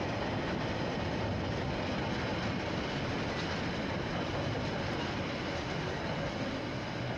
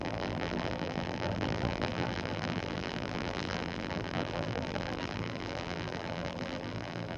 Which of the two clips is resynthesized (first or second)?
second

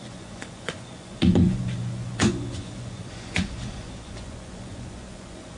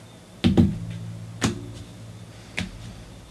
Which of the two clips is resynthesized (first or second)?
first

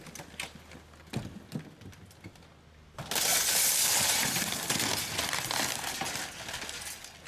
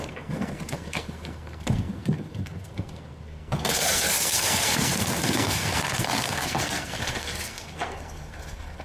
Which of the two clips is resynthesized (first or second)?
second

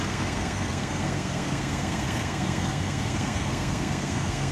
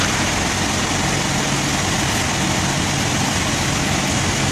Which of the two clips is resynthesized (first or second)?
first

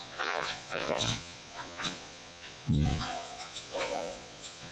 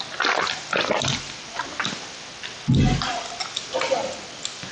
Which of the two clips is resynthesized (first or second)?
first